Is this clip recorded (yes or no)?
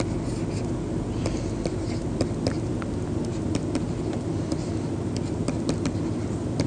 yes